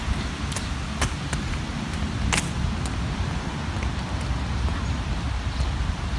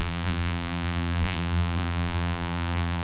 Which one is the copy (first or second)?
second